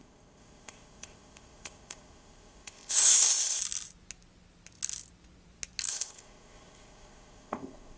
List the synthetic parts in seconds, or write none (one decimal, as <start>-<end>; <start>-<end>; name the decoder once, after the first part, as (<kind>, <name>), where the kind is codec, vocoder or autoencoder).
0.0-3.6 (codec, ZipCodec); 5.9-8.0